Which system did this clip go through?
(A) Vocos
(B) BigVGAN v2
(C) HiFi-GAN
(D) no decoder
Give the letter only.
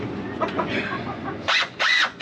A